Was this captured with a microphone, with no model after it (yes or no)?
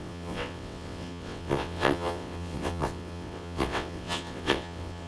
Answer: no